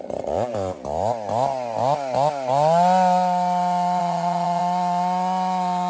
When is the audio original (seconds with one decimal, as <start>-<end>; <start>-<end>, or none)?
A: 0.5-4.0; 4.6-5.9